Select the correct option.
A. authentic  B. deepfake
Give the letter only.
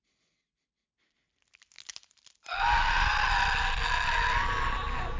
A